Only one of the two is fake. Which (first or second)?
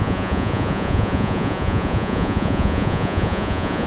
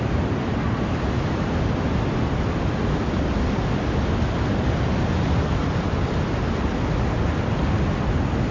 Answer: first